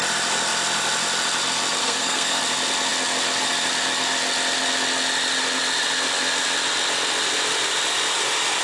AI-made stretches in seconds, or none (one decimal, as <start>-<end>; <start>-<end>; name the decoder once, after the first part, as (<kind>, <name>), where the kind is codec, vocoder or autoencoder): 1.8-2.4 (codec, SNAC)